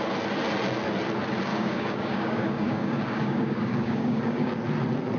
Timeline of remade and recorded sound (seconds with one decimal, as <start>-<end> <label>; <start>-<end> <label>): 0.0-1.5 recorded; 1.5-4.6 remade; 4.6-5.2 recorded